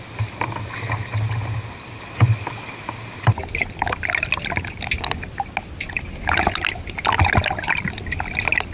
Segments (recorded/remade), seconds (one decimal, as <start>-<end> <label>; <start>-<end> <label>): 0.0-8.7 recorded